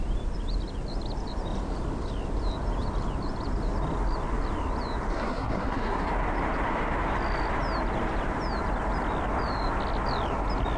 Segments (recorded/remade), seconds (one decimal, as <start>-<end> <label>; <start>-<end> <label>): 0.0-5.1 recorded; 5.1-6.1 remade; 6.1-10.8 recorded